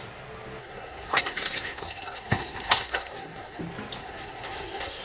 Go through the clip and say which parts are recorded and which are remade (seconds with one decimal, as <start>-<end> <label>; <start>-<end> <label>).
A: 0.0-0.6 recorded; 0.6-3.6 remade; 3.6-4.0 recorded; 4.0-5.0 remade